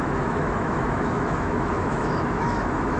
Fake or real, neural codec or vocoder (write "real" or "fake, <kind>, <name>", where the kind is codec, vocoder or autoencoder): fake, autoencoder, DAC-VAE